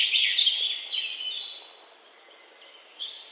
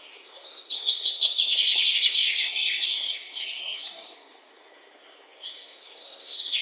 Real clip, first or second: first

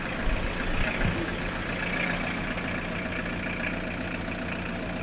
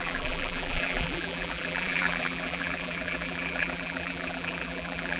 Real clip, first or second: first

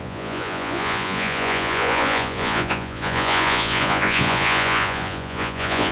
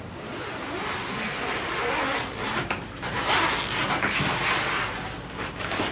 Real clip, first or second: second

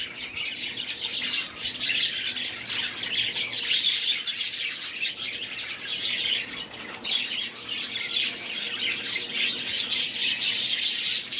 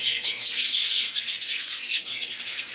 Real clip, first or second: first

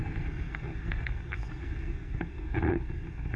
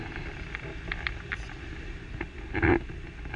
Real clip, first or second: second